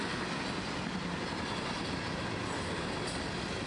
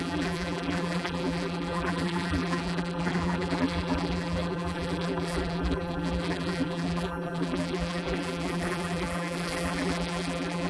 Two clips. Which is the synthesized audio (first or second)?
second